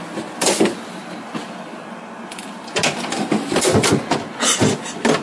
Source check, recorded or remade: recorded